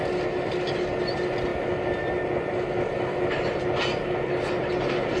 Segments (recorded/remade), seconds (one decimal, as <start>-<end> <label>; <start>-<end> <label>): 0.0-5.2 recorded